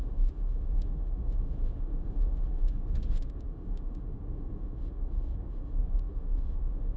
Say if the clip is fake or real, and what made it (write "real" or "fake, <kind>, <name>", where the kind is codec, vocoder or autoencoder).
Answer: fake, autoencoder, DAC-VAE